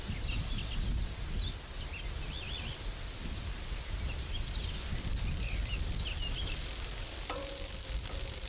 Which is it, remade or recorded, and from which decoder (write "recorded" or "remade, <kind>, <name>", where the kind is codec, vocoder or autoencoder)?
recorded